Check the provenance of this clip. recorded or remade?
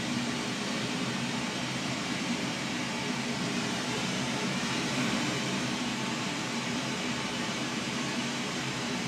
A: remade